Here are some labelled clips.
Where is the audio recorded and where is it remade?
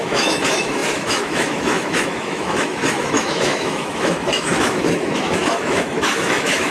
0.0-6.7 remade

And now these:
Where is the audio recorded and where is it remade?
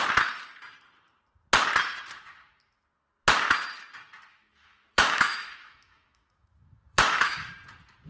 0.0-4.3 recorded; 4.3-7.5 remade; 7.5-8.1 recorded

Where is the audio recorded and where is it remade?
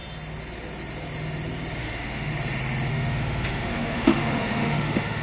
0.0-1.8 recorded; 1.8-2.3 remade; 2.3-2.9 recorded; 2.9-5.2 remade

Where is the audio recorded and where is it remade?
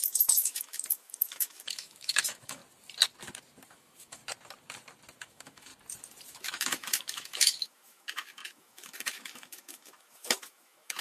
0.0-2.6 remade; 2.6-3.7 recorded; 3.7-4.2 remade; 4.2-5.2 recorded; 5.2-5.7 remade; 5.7-6.3 recorded; 6.3-11.0 remade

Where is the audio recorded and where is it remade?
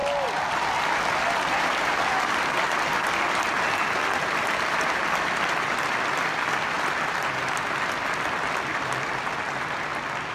0.0-10.3 recorded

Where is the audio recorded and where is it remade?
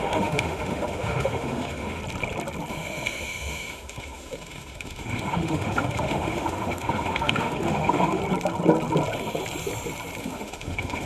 0.0-2.0 remade; 2.0-2.7 recorded; 2.7-8.2 remade; 8.2-10.2 recorded; 10.2-11.1 remade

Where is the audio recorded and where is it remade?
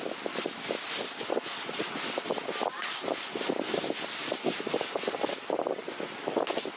0.0-6.8 recorded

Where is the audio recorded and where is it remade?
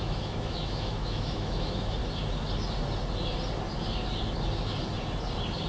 0.0-2.0 remade; 2.0-5.7 recorded